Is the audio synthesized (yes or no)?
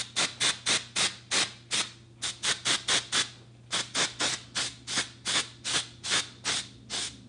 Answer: no